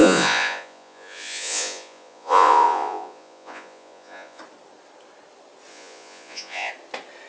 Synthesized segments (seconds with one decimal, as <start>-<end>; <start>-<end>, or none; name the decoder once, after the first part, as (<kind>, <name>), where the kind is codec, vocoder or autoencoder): 0.0-4.4 (vocoder, Vocos); 5.7-6.7